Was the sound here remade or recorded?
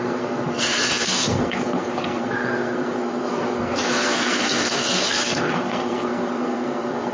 remade